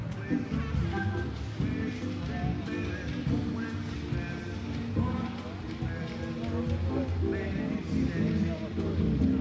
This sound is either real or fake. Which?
real